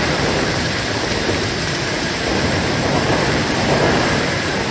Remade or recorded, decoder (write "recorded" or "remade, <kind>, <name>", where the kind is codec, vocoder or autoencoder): remade, vocoder, BigVGAN v2